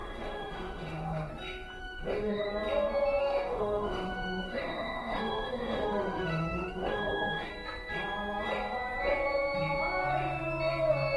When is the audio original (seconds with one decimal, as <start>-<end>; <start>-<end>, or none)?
1.3-1.8; 2.5-3.2; 7.5-11.2